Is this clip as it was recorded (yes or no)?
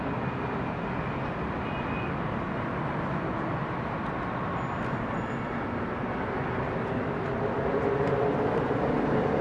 yes